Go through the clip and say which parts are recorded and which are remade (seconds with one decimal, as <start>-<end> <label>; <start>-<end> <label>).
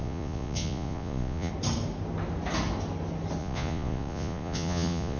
0.0-1.5 remade; 1.5-3.4 recorded; 3.4-5.2 remade